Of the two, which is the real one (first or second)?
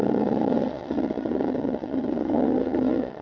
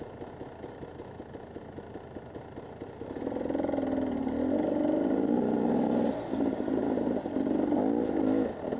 second